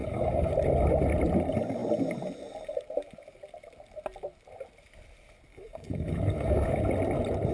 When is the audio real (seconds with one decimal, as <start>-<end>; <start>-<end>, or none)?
0.5-5.5; 6.8-7.5